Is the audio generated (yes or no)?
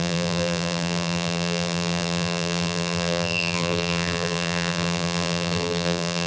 yes